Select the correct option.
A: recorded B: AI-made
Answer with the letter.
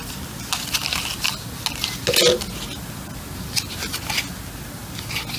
A